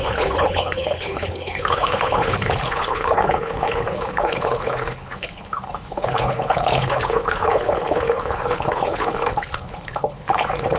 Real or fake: fake